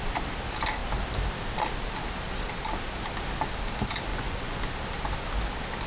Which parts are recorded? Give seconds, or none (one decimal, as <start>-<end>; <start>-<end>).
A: 0.0-4.1; 4.6-5.9